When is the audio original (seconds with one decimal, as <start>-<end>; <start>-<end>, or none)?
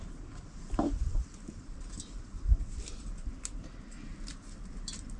0.0-5.2